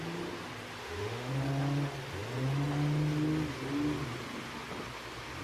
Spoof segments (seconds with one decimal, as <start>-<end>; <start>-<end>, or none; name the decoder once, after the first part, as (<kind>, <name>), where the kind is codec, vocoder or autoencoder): 0.8-1.3 (autoencoder, DAC-VAE)